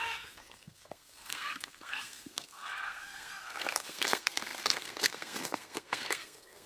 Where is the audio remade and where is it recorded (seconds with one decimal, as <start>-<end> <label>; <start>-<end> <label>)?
0.0-6.7 remade